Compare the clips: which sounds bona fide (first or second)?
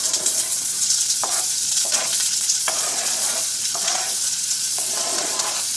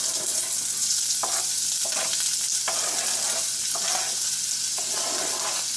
second